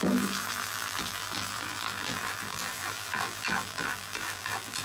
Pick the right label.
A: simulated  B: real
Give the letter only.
A